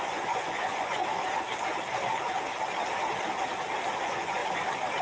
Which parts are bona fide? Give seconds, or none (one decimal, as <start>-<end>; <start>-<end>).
1.0-4.0; 4.4-5.0